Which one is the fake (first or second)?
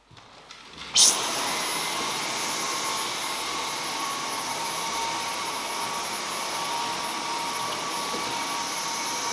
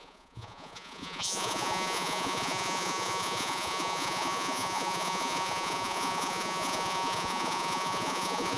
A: second